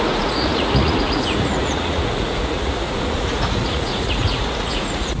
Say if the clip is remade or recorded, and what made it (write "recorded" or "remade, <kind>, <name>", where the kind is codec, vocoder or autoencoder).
remade, vocoder, Vocos